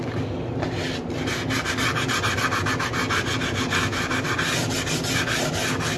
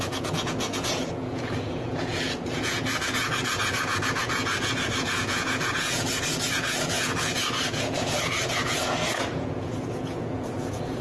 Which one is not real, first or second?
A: second